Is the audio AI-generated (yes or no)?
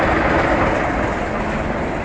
no